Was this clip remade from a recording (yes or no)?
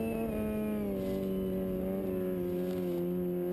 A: no